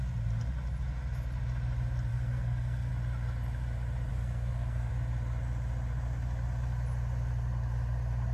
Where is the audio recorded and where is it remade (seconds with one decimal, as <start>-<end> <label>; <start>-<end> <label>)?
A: 0.0-2.1 recorded; 2.1-2.9 remade; 2.9-4.1 recorded; 4.1-4.9 remade; 4.9-8.3 recorded